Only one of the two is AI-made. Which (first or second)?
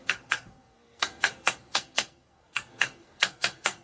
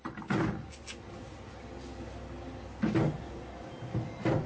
first